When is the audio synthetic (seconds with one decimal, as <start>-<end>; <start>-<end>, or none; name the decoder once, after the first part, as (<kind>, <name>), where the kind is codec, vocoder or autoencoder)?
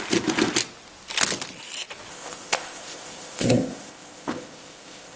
2.1-5.2 (codec, ZipCodec)